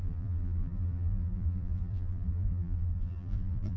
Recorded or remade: remade